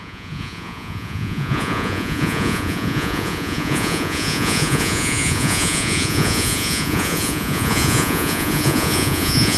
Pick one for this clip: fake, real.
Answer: fake